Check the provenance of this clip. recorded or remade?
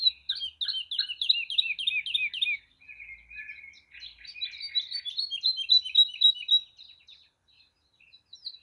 recorded